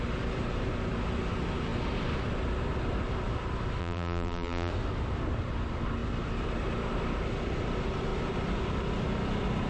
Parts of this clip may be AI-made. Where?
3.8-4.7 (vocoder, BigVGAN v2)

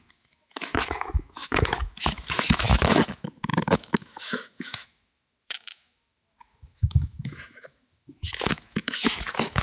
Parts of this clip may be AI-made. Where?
0.0-9.6 (autoencoder, DAC-VAE)

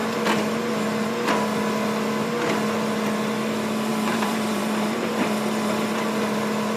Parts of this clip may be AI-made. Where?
3.9-5.1 (vocoder, BigVGAN v2)

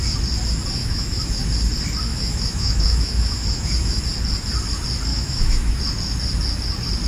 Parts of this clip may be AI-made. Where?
0.8-1.4 (autoencoder, DAC-VAE); 2.1-4.0; 5.1-5.8

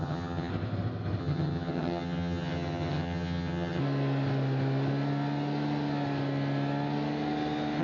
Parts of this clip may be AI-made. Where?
0.0-0.5 (vocoder, HiFi-GAN); 1.2-3.8

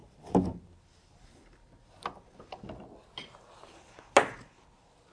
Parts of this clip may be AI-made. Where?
none